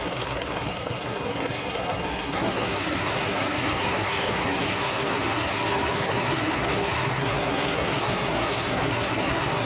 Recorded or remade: remade